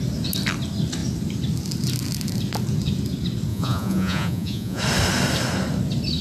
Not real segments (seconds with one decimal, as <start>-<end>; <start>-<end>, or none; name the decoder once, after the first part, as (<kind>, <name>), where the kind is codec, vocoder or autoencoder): 3.5-4.8 (vocoder, Vocos)